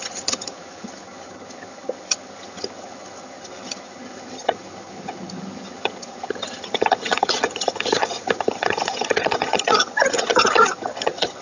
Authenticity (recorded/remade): remade